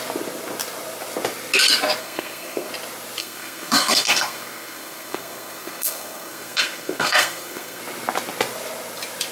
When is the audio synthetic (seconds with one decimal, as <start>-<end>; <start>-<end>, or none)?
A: 2.0-2.7; 3.2-7.8